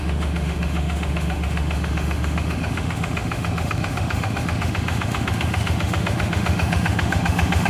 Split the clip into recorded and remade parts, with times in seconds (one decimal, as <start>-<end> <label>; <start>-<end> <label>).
0.0-7.7 remade